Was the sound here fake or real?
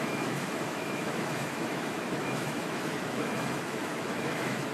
fake